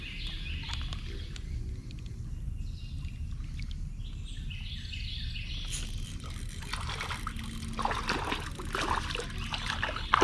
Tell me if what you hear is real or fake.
real